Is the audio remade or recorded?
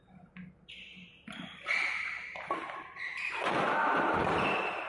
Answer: recorded